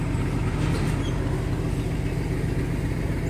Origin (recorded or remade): recorded